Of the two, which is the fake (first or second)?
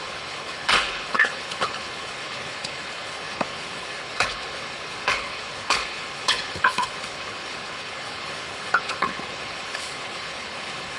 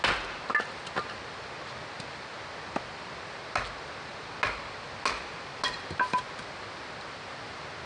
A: first